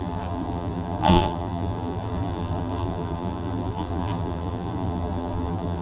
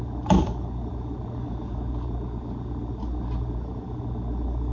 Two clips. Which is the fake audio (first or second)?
first